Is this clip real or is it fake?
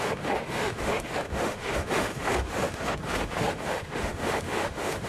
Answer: fake